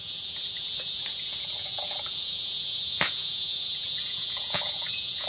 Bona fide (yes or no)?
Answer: no